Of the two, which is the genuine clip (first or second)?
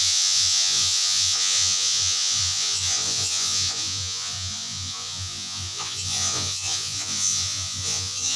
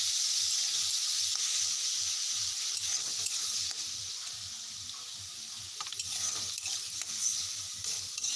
second